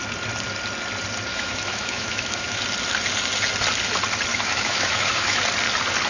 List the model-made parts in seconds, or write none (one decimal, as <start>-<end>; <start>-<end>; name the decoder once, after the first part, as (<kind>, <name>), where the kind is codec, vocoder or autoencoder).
1.3-2.6 (autoencoder, DAC-VAE); 4.3-5.4